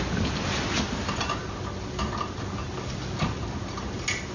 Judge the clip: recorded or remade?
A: recorded